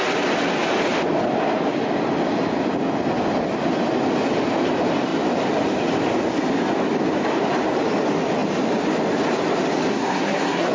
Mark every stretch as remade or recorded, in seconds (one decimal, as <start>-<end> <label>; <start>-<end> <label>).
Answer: 0.0-9.9 recorded; 9.9-10.7 remade